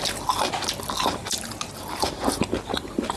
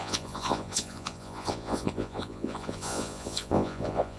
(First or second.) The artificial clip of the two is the second